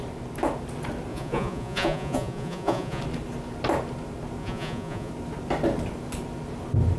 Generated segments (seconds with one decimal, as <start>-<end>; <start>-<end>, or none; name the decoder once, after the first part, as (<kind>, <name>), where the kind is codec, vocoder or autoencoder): 1.1-3.0 (vocoder, Vocos); 4.4-5.1